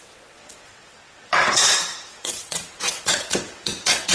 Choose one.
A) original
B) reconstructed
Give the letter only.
B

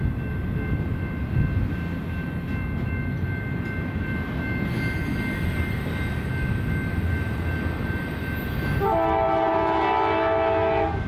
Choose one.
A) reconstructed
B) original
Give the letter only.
B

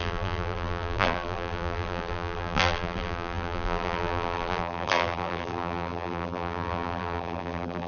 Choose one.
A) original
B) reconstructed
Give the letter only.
B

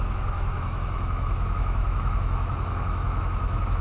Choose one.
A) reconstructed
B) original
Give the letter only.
A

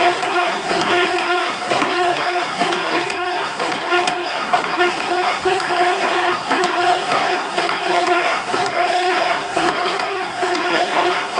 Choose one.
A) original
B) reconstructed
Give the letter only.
B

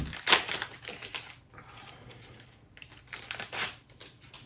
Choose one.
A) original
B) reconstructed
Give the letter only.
A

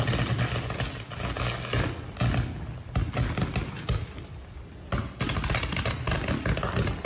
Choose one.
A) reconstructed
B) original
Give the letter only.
B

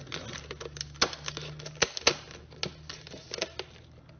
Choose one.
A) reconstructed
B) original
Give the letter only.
B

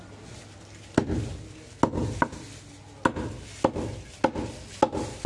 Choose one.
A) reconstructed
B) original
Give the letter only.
B